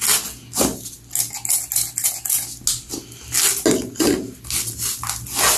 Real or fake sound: real